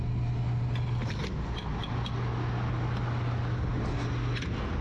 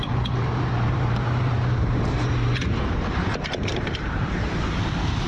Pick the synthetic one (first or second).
second